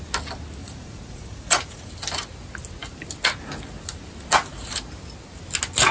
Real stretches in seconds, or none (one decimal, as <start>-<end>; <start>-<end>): 0.0-0.6; 1.9-5.9